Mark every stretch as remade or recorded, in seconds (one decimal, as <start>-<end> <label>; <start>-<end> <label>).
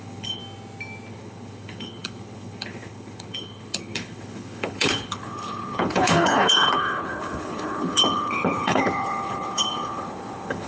0.0-0.4 remade; 0.4-1.1 recorded; 1.1-10.7 remade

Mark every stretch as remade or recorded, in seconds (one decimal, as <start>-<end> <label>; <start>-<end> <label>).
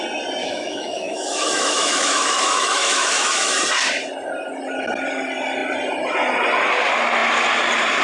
0.0-0.4 recorded; 0.4-3.5 remade; 3.5-8.0 recorded